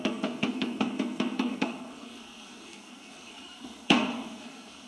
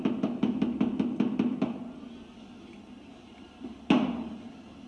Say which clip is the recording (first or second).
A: second